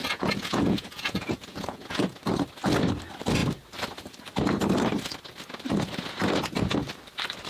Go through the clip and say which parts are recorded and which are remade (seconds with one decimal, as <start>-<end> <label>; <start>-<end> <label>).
0.0-2.0 remade; 2.0-7.5 recorded